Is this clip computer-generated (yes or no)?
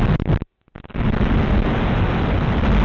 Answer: no